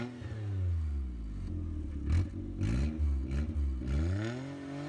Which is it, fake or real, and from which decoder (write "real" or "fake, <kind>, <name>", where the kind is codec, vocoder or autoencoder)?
real